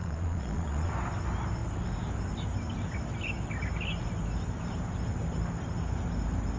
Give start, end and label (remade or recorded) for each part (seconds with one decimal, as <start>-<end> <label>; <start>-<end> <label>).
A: 0.0-0.9 remade; 0.9-6.6 recorded